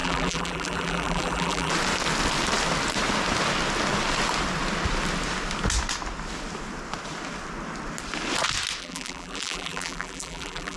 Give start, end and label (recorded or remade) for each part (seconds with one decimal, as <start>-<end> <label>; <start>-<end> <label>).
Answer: 0.0-1.7 remade; 1.7-8.8 recorded; 8.8-10.8 remade